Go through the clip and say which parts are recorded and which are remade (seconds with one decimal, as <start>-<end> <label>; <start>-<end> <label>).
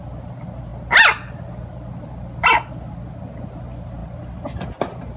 0.0-5.2 recorded